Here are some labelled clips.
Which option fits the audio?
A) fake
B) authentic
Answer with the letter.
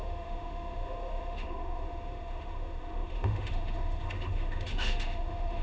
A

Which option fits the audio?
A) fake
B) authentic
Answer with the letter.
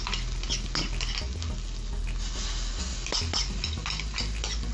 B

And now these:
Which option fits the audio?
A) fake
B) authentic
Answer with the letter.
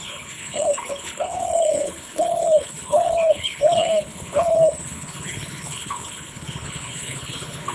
A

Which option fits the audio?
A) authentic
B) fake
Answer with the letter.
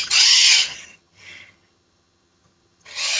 B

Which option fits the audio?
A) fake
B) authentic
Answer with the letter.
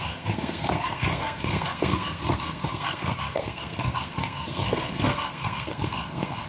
A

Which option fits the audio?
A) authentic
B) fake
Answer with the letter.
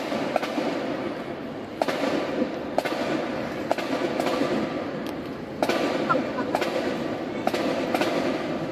A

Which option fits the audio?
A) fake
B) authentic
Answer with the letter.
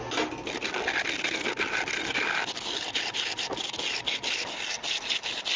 B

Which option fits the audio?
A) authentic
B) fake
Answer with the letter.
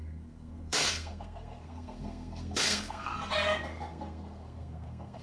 B